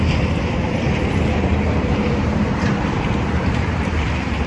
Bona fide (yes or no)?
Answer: no